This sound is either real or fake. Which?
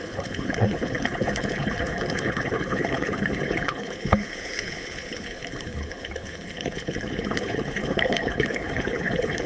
fake